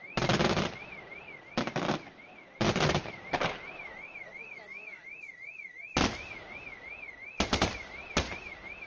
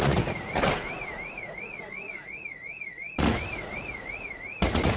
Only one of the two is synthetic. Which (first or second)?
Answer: second